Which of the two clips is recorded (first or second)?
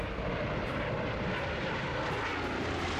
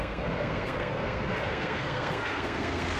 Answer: first